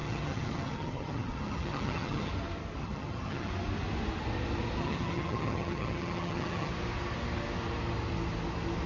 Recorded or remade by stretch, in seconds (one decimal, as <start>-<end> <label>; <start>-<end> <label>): 0.0-2.3 remade; 2.3-2.8 recorded; 2.8-3.5 remade; 3.5-4.8 recorded; 4.8-6.7 remade; 6.7-8.9 recorded